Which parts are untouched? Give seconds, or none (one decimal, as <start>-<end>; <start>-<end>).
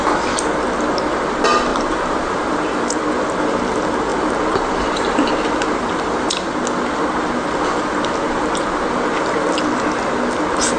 0.0-1.7; 3.0-4.1; 6.3-10.8